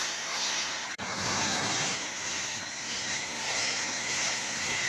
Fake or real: fake